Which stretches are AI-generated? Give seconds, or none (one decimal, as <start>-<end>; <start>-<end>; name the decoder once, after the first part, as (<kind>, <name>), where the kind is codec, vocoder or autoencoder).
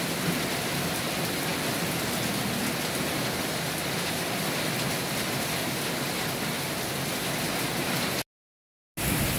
none